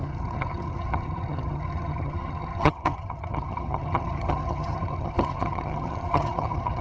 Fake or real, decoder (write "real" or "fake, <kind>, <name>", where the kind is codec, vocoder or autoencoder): fake, vocoder, HiFi-GAN